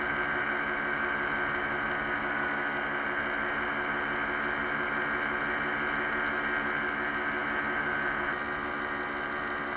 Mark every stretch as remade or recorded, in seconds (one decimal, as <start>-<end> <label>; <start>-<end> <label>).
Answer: 0.0-9.8 recorded